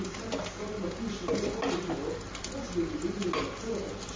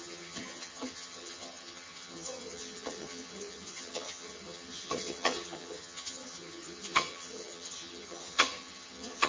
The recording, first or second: first